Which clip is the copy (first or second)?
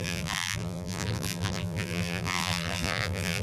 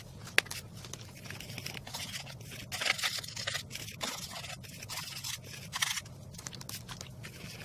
first